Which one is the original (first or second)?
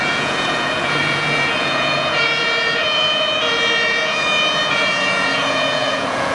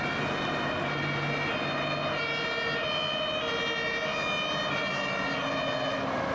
second